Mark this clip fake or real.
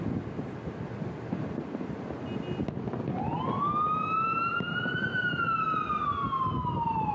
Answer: real